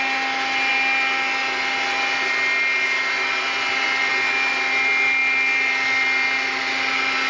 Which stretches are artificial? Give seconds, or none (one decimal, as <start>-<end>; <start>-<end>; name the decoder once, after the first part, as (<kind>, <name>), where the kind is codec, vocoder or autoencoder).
none